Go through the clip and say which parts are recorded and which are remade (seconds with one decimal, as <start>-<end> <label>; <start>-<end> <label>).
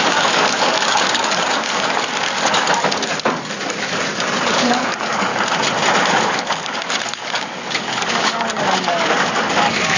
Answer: 0.0-5.3 remade; 5.3-6.1 recorded; 6.1-10.0 remade